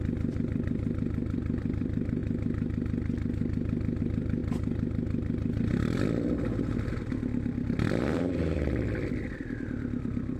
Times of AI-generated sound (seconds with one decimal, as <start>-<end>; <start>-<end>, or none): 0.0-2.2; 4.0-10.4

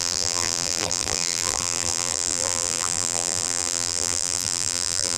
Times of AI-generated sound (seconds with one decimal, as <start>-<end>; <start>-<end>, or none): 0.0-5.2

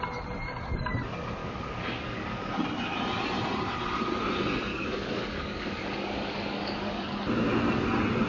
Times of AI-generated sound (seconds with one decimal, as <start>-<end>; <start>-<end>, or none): 1.4-2.5; 4.7-7.2

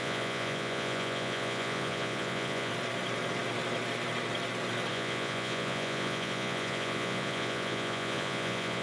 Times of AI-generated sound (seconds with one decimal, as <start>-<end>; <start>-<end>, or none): 0.0-2.7; 4.9-8.8

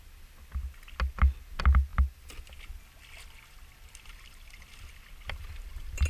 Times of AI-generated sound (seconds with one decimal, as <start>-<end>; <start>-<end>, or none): none